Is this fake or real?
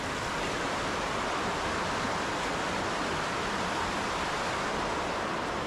real